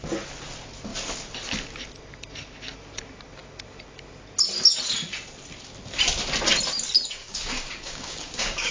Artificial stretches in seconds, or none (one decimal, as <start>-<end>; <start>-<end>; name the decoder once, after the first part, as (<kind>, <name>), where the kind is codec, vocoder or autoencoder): 7.2-8.7 (codec, DAC)